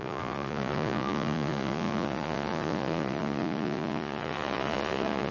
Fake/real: fake